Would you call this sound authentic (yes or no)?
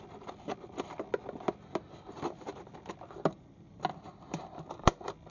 yes